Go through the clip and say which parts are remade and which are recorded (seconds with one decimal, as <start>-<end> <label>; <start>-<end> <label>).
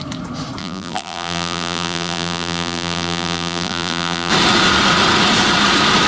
0.0-0.6 recorded; 0.6-4.3 remade; 4.3-6.1 recorded